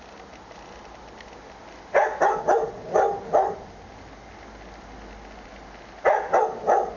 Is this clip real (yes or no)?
yes